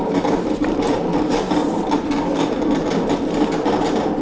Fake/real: real